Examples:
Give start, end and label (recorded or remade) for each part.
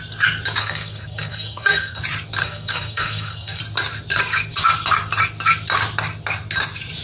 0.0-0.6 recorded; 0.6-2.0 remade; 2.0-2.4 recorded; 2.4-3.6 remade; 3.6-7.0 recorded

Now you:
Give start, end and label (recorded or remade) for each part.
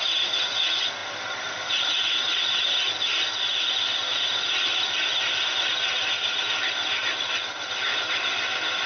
0.0-8.9 recorded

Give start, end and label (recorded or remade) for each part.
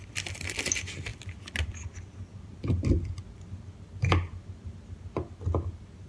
0.0-6.1 recorded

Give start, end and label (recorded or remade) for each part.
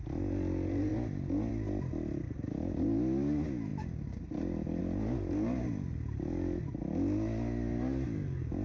0.0-8.6 recorded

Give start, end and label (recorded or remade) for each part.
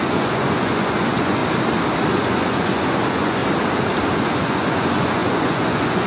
0.0-1.4 remade; 1.4-2.1 recorded; 2.1-3.4 remade; 3.4-4.2 recorded; 4.2-6.1 remade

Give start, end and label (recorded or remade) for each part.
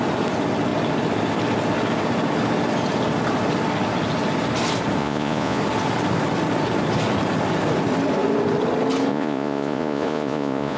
0.0-5.0 recorded; 5.0-5.6 remade; 5.6-9.1 recorded; 9.1-10.8 remade